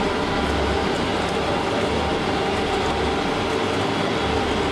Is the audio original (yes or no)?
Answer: yes